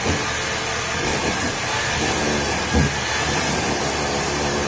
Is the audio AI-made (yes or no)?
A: no